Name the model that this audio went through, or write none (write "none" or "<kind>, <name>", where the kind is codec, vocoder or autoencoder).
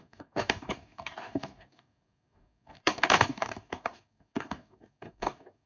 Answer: codec, DAC